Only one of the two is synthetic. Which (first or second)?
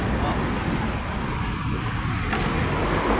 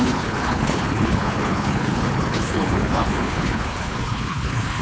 second